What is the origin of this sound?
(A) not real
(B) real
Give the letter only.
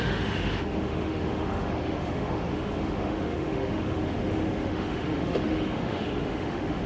A